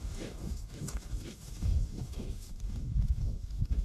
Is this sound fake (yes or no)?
yes